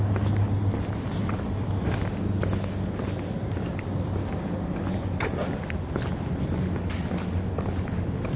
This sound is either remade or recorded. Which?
recorded